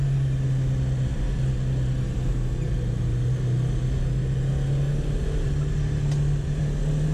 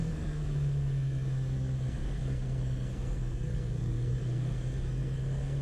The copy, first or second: second